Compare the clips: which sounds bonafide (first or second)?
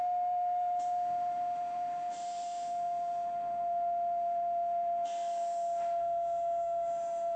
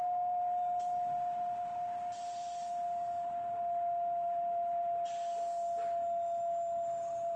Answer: second